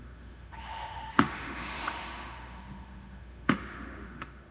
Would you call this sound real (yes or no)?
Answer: no